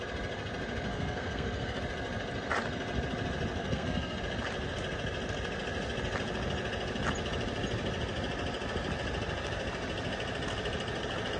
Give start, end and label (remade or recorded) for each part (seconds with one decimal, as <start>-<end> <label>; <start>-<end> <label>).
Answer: 0.0-0.9 recorded; 0.9-1.8 remade; 1.8-3.6 recorded; 3.6-4.2 remade; 4.2-11.4 recorded